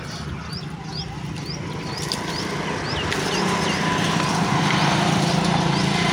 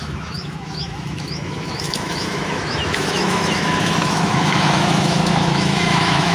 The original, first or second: first